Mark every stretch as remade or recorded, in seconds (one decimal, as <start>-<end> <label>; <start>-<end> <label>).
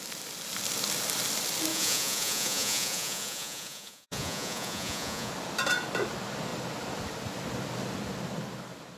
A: 0.0-1.7 recorded; 1.7-5.3 remade; 5.3-9.0 recorded